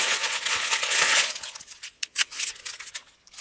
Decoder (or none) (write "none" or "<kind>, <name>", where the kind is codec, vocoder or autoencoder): vocoder, Vocos